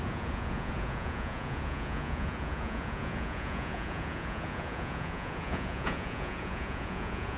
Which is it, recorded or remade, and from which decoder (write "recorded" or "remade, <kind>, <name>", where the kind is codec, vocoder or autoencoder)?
remade, vocoder, Vocos